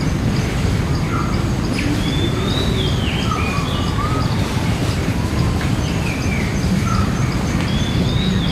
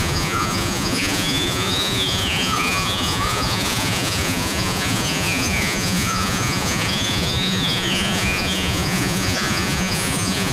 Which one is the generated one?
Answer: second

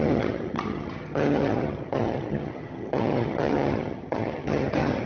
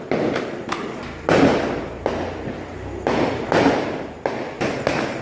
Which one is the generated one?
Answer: first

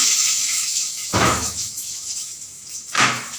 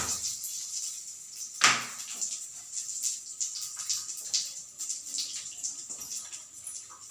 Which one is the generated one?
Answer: first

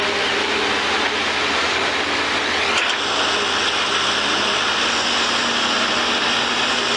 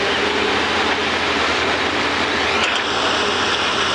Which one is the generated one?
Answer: second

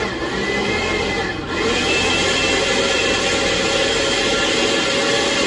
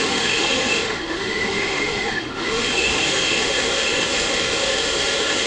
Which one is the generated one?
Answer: second